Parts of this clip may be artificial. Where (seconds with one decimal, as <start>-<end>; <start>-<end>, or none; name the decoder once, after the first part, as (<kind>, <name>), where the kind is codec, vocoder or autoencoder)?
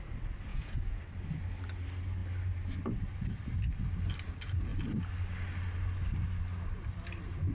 0.5-1.0 (vocoder, Vocos)